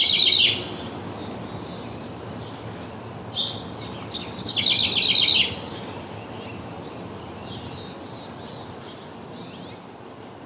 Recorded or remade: recorded